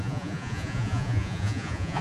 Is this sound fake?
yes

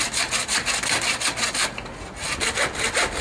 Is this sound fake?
no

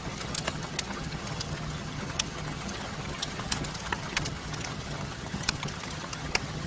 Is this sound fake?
yes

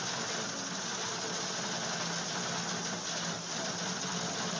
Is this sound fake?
no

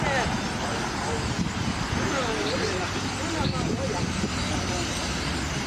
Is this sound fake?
no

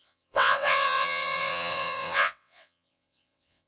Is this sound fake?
yes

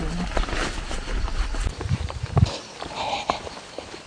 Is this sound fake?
no